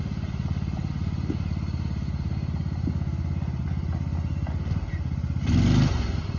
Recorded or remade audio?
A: recorded